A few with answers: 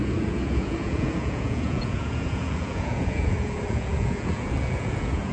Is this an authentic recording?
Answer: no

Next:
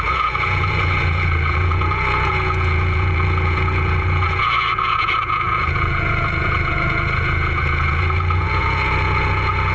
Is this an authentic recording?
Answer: no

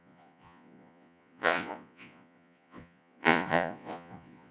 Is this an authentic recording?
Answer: no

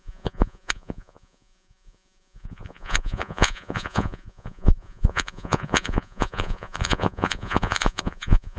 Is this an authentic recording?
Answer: no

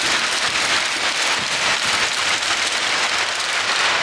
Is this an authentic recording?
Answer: yes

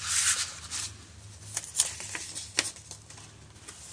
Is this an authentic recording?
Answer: yes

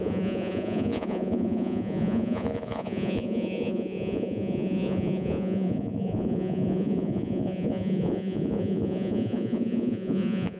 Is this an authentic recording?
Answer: no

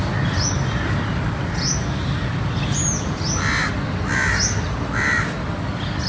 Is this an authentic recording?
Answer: yes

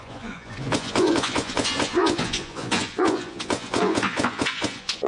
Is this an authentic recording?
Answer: no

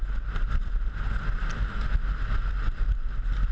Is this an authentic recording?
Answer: yes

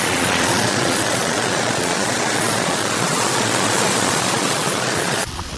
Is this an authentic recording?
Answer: no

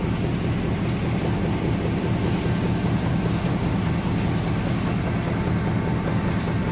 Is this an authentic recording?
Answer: yes